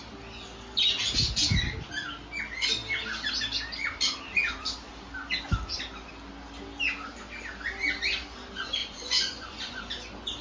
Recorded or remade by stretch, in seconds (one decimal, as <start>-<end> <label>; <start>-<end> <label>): 0.0-8.8 recorded; 8.8-9.8 remade; 9.8-10.4 recorded